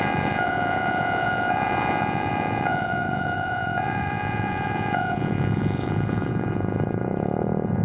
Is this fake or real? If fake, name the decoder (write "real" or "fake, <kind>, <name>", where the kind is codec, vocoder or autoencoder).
fake, vocoder, Vocos